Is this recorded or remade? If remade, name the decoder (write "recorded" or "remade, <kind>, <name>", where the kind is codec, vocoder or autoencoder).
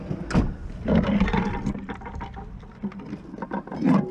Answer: recorded